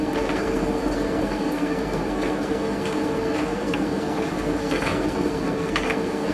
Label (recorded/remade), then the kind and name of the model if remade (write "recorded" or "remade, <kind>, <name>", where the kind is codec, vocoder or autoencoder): remade, codec, SNAC